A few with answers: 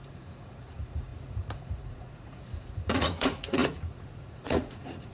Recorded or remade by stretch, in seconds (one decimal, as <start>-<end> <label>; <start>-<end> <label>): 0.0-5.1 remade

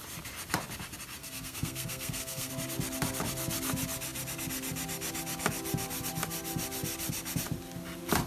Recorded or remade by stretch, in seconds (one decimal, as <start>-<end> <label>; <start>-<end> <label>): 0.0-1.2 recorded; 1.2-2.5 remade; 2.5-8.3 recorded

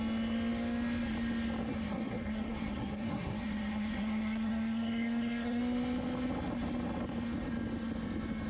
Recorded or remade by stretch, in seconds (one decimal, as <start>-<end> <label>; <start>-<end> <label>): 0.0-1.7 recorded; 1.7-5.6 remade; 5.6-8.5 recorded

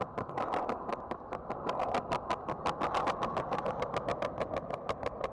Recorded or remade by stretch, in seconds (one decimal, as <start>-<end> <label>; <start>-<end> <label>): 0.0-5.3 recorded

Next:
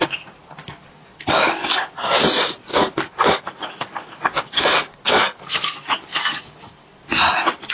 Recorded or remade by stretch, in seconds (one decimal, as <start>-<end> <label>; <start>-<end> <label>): 0.0-0.6 recorded; 0.6-1.8 remade; 1.8-2.7 recorded; 2.7-6.4 remade; 6.4-7.7 recorded